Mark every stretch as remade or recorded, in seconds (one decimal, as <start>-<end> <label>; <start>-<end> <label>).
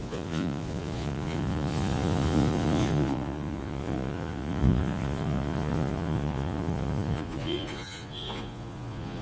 0.0-9.2 remade